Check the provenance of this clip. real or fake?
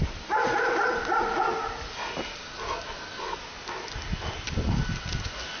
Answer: real